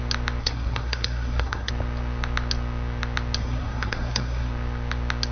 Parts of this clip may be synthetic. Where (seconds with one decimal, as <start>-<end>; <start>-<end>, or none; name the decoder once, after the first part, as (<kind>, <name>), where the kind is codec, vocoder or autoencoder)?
0.4-1.7 (codec, SNAC); 3.4-4.5